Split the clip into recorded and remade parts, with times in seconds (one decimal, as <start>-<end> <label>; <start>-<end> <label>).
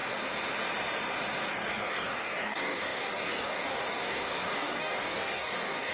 0.0-1.5 recorded; 1.5-5.9 remade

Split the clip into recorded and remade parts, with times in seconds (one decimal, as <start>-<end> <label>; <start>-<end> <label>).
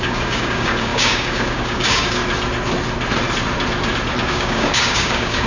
0.0-2.2 remade; 2.2-4.2 recorded; 4.2-5.5 remade